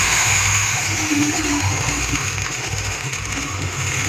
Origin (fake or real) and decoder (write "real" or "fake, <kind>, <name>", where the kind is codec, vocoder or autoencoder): fake, autoencoder, DAC-VAE